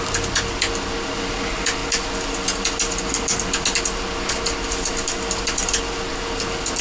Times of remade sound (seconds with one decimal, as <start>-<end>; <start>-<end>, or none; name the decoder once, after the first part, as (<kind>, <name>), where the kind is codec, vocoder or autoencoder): none